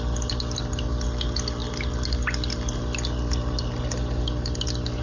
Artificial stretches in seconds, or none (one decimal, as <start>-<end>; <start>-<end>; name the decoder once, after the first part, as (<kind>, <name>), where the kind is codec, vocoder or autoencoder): none